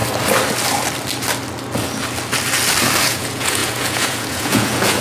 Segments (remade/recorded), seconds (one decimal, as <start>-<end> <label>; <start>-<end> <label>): 0.0-3.0 recorded; 3.0-5.0 remade